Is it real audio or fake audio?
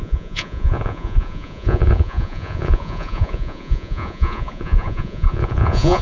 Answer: fake